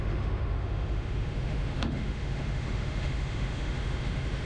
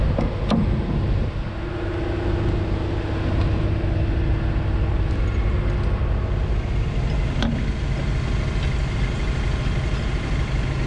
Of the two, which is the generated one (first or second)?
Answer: first